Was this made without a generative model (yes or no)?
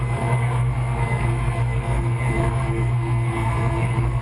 no